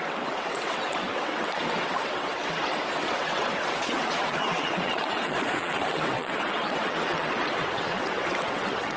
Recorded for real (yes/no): no